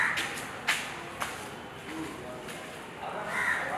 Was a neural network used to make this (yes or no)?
no